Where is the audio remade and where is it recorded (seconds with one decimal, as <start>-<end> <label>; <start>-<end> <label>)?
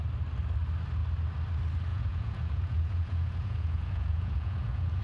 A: 0.0-1.9 recorded; 1.9-5.0 remade